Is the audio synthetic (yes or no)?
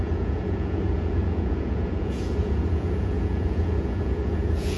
yes